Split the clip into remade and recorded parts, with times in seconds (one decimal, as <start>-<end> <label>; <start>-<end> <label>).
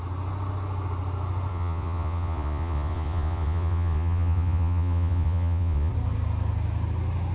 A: 0.0-1.5 recorded; 1.5-5.9 remade; 5.9-7.3 recorded